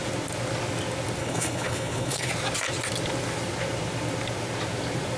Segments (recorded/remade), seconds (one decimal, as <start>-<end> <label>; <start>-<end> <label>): 0.0-1.2 recorded; 1.2-2.3 remade; 2.3-5.2 recorded